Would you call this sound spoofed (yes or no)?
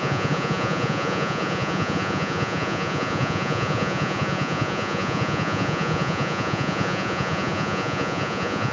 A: yes